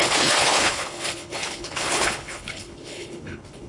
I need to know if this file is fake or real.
fake